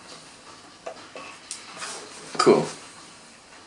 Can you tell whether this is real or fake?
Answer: real